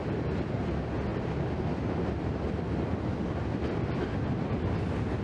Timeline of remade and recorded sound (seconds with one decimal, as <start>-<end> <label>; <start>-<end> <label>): 0.0-5.2 recorded